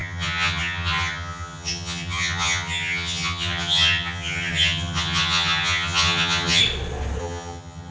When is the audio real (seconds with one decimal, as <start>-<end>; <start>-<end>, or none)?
6.6-7.2